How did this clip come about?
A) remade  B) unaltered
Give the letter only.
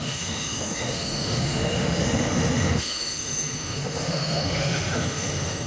A